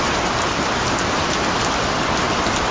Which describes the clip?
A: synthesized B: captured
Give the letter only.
B